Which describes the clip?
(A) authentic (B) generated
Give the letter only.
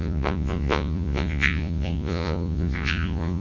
B